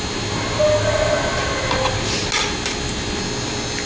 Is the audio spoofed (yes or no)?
no